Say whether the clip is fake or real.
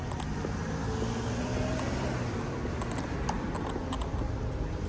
real